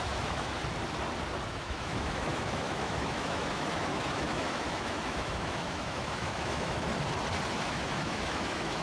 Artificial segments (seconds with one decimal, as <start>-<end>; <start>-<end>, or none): 0.0-0.6; 1.5-6.9; 7.5-8.8